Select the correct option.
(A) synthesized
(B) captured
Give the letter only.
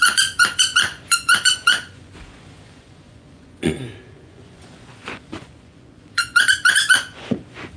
A